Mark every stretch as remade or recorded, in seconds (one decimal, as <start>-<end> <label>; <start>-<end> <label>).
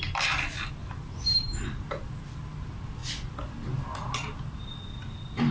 0.0-5.5 recorded